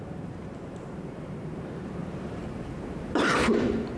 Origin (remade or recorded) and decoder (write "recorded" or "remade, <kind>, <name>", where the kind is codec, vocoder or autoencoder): remade, vocoder, BigVGAN v2